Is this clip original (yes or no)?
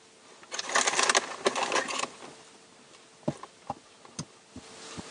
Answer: yes